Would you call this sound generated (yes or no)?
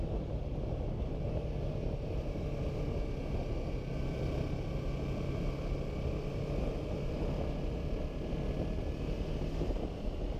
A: no